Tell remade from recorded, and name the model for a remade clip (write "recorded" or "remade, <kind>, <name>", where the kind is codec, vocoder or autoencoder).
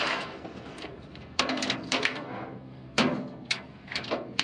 remade, codec, SNAC